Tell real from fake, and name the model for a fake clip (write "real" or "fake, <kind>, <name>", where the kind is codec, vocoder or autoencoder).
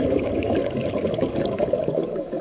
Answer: fake, codec, DAC